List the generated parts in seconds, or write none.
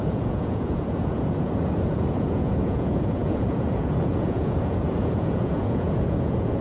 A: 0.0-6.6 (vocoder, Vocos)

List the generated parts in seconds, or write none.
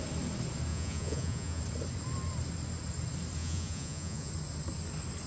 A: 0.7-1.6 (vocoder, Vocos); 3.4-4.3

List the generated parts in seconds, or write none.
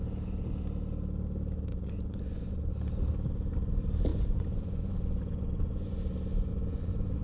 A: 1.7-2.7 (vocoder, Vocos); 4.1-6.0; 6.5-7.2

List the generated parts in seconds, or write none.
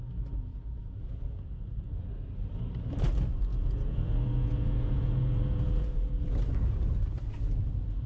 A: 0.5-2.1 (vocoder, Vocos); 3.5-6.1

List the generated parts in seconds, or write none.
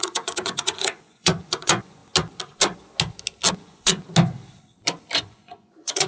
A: 0.0-2.0 (vocoder, Vocos); 3.5-4.0; 5.2-6.1